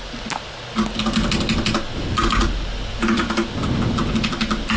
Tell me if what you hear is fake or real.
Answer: real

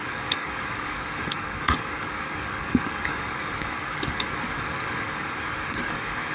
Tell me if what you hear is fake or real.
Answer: fake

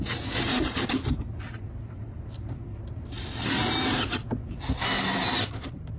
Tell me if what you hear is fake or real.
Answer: real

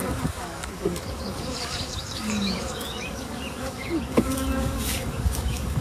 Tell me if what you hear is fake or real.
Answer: fake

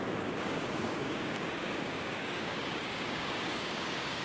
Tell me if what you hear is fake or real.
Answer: fake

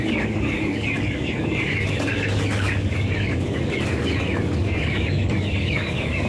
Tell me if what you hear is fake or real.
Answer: fake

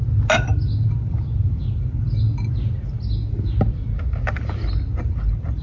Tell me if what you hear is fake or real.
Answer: real